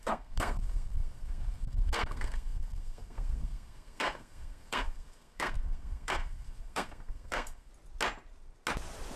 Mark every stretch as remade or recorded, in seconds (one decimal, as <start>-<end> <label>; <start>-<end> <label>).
0.0-7.7 remade; 7.7-9.2 recorded